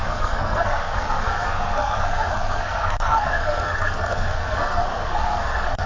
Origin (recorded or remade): remade